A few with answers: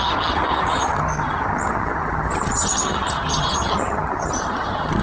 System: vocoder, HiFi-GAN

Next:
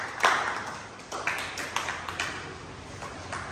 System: none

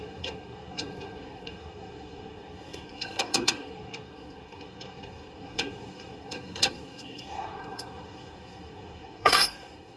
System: codec, SNAC